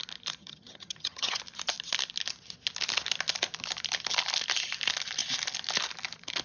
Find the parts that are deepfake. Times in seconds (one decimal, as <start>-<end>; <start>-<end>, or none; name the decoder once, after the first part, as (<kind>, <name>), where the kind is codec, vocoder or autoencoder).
0.4-1.4 (vocoder, HiFi-GAN)